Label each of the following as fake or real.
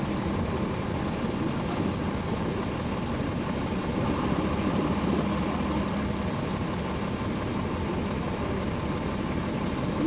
real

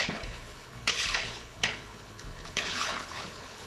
fake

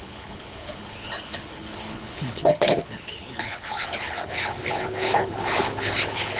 fake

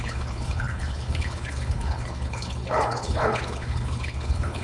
fake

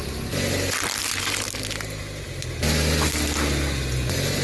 real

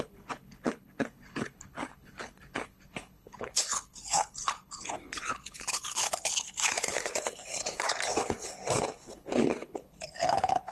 fake